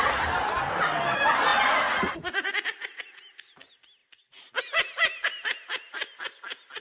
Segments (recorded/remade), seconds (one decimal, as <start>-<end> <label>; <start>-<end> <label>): 0.0-1.5 recorded; 1.5-2.5 remade; 2.5-6.8 recorded